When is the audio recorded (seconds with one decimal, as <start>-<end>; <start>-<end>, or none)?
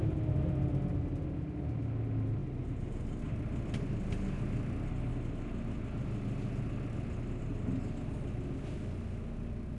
0.0-9.8